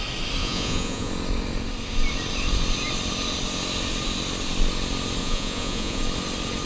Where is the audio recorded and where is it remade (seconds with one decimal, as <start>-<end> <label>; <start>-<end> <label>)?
0.0-0.4 recorded; 0.4-1.1 remade; 1.1-5.2 recorded; 5.2-6.0 remade; 6.0-6.7 recorded